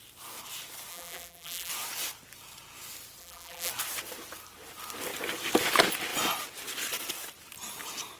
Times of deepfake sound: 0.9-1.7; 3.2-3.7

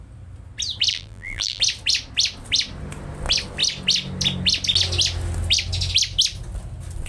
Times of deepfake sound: 0.9-1.6

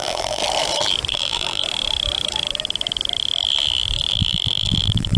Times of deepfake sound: 0.0-0.4; 1.1-1.6; 4.1-5.2

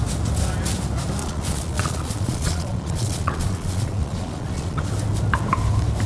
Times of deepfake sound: 1.2-4.9

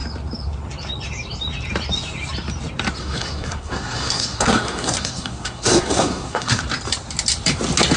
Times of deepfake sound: 3.0-6.6

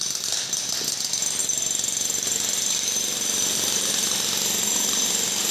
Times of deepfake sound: none

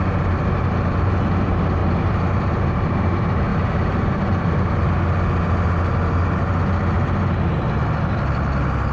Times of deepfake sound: 1.8-2.8; 3.5-4.7

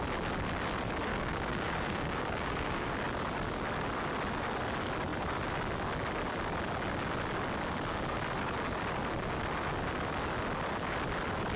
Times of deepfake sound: 1.1-2.9